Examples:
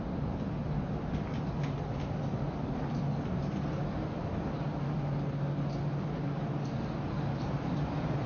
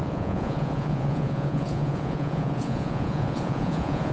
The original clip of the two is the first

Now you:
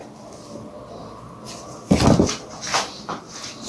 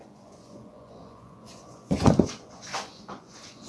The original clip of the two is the first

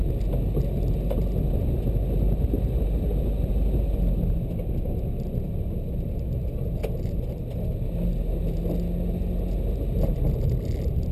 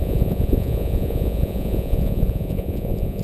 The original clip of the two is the first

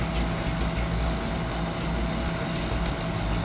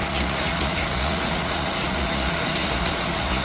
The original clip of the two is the first